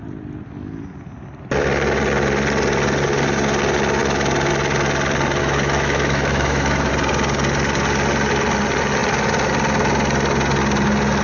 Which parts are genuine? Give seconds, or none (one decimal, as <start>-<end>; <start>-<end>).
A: 0.0-5.4; 6.9-11.2